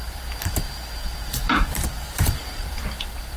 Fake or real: fake